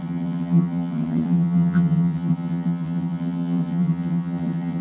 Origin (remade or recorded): remade